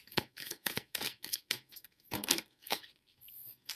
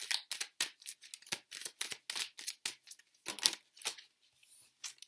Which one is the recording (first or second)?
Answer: second